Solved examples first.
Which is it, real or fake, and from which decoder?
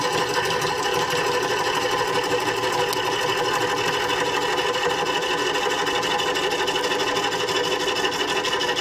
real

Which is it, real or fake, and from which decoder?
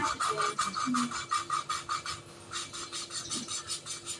real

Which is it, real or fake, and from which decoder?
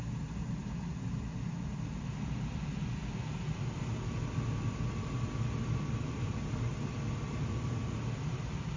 real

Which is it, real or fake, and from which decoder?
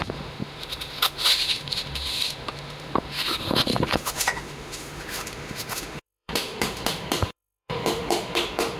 fake, autoencoder, DAC-VAE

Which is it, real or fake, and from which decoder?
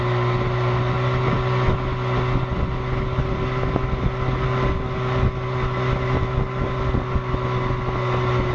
real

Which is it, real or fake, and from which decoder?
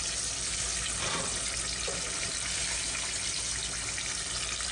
real